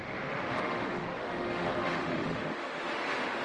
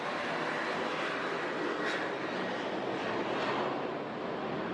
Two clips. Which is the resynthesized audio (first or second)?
first